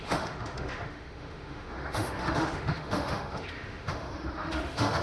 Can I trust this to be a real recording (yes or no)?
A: no